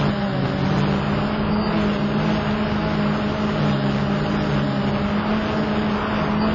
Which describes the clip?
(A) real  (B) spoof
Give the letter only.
A